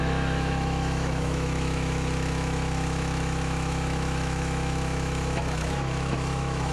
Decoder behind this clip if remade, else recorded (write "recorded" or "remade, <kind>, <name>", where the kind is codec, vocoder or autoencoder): remade, autoencoder, DAC-VAE